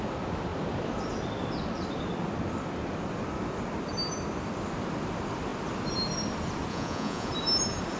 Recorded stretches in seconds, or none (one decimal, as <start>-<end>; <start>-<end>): 0.0-6.7; 7.3-8.0